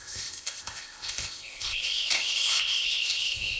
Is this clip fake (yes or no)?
yes